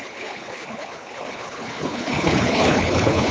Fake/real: fake